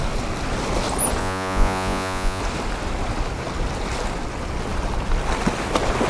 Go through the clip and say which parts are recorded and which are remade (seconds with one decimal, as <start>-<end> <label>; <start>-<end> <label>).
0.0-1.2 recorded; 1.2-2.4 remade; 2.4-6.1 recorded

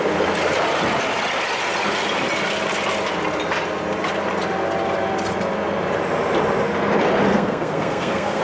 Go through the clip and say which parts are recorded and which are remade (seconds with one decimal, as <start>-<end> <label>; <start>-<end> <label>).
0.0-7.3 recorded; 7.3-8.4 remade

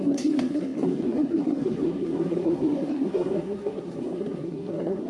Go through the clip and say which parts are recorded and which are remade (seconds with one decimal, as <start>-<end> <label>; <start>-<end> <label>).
0.0-5.1 remade